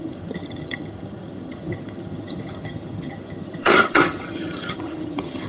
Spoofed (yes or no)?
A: yes